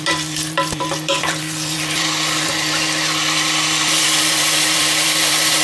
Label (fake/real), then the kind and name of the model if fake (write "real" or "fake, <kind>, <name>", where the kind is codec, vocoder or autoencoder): fake, vocoder, BigVGAN v2